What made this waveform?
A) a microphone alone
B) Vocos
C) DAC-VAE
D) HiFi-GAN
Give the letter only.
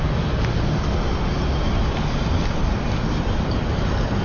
A